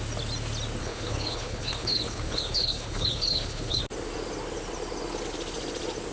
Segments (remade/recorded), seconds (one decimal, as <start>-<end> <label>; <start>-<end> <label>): 0.0-0.8 recorded; 0.8-3.8 remade; 3.8-6.1 recorded